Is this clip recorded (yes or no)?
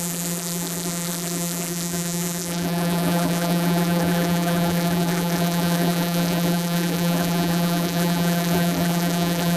no